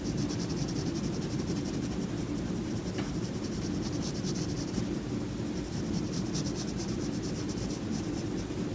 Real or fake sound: real